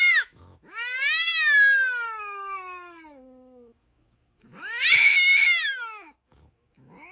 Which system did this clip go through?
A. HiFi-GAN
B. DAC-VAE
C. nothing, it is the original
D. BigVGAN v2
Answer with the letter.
B